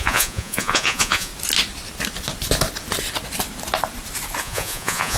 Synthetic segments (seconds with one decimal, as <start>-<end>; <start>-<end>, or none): 0.0-1.3; 4.4-5.2